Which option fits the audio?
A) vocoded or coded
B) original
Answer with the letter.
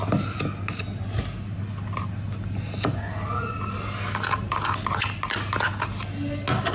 B